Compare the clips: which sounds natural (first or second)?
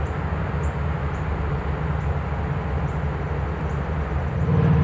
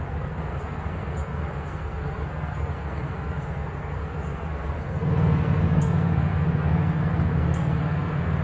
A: first